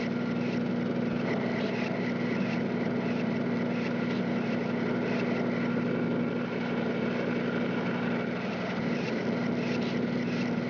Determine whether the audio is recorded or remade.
recorded